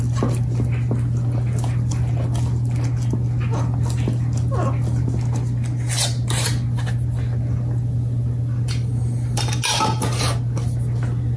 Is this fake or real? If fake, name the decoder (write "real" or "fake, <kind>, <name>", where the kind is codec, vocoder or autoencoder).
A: real